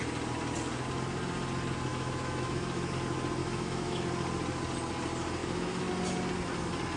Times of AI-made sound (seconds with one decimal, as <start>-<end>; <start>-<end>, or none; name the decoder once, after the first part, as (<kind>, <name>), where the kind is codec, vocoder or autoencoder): 1.9-2.9 (autoencoder, DAC-VAE); 3.4-4.0; 5.4-5.9